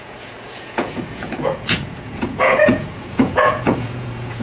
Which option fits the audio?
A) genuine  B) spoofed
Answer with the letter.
B